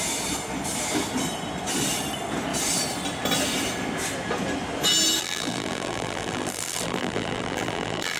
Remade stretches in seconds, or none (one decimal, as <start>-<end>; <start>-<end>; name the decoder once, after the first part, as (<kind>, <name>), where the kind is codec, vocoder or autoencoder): 5.2-8.2 (vocoder, BigVGAN v2)